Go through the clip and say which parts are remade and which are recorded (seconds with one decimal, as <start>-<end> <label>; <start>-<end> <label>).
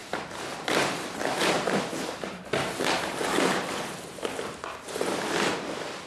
0.0-6.1 recorded